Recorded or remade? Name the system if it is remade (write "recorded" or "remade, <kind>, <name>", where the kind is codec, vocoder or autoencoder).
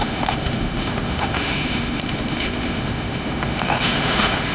remade, autoencoder, DAC-VAE